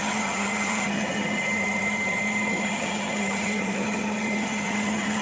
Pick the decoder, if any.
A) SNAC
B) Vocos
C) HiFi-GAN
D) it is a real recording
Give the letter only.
C